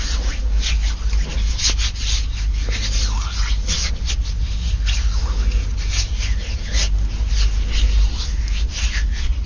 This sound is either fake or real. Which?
real